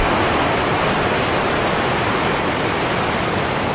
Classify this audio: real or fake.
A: real